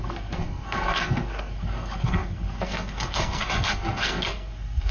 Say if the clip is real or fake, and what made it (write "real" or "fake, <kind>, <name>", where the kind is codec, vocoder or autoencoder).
fake, codec, SNAC